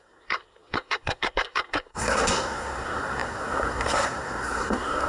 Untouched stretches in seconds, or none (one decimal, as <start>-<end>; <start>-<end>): none

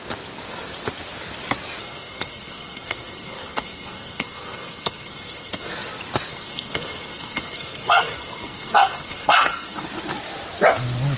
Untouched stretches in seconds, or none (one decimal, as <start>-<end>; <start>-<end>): 0.0-1.8; 5.7-6.3; 9.8-11.2

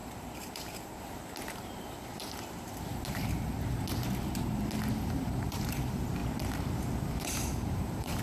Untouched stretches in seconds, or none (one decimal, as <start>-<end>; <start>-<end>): 2.9-4.9; 6.2-7.2

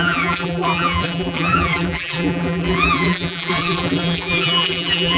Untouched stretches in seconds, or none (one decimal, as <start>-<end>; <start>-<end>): none

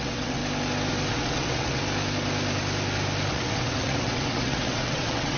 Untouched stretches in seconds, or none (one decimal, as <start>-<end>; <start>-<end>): 0.4-1.1; 1.8-3.3

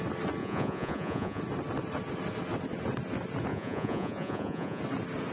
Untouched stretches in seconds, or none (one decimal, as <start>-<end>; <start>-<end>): 0.0-0.4; 1.4-3.5; 4.8-5.3

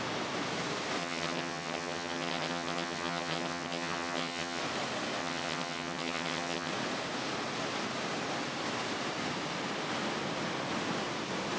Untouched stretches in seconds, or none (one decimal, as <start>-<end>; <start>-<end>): 0.0-1.0; 4.6-5.2; 6.7-11.6